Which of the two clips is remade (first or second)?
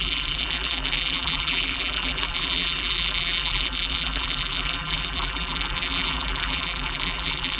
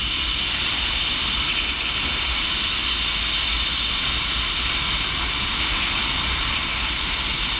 first